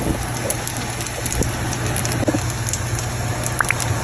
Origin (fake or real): real